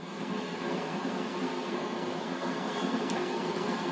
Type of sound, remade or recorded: remade